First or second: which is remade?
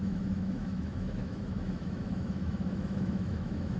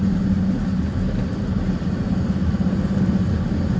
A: first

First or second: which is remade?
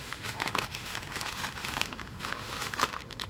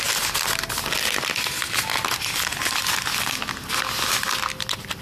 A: first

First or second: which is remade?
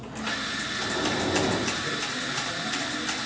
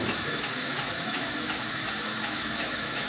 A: second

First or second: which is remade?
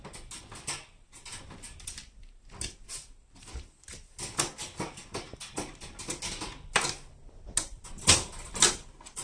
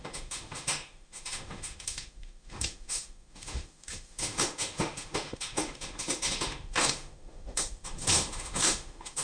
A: second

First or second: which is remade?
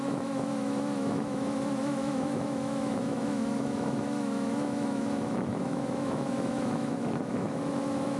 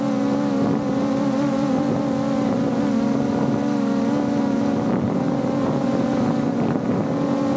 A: first